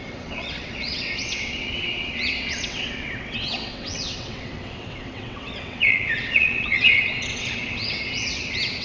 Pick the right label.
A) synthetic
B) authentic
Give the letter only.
A